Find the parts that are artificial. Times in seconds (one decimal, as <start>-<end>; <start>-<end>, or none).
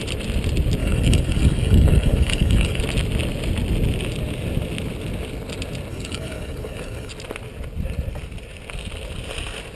0.8-2.8; 5.9-7.1